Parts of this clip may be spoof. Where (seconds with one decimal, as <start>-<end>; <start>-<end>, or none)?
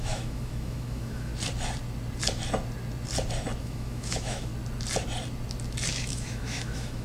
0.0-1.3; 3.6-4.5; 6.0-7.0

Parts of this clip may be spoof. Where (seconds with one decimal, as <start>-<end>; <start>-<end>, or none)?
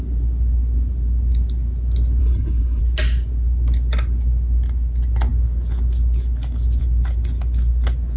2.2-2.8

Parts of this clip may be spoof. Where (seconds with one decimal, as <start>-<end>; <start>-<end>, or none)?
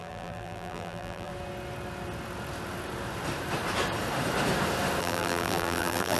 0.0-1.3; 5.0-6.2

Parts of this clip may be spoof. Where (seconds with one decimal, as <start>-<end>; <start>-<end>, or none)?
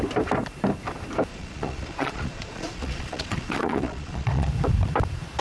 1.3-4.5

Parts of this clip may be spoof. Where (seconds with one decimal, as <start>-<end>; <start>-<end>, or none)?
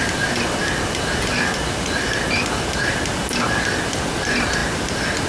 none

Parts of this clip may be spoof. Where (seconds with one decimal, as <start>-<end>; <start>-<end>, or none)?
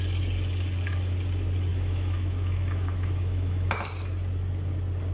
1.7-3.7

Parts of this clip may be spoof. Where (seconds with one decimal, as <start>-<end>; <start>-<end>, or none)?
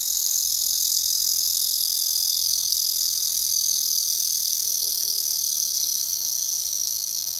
0.0-7.4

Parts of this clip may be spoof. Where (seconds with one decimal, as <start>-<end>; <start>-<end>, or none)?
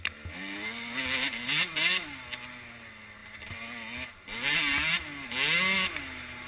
none